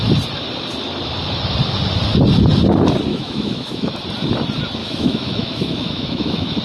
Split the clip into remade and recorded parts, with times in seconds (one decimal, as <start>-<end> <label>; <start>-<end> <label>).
0.0-3.1 recorded; 3.1-3.9 remade; 3.9-4.8 recorded; 4.8-6.6 remade